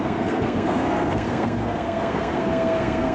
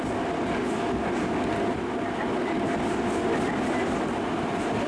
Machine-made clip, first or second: first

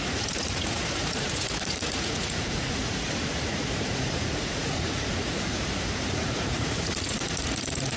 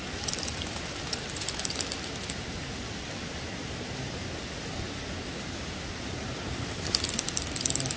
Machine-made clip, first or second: first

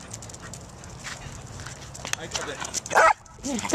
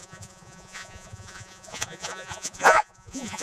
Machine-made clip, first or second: second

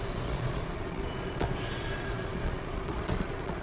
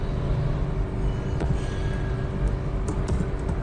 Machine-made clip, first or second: first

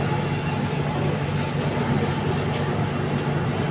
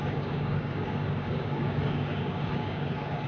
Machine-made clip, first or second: second